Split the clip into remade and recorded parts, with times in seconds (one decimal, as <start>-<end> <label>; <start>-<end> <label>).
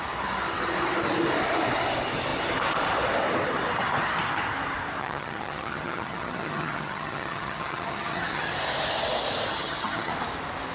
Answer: 0.0-5.0 recorded; 5.0-8.5 remade; 8.5-9.5 recorded; 9.5-10.1 remade; 10.1-10.7 recorded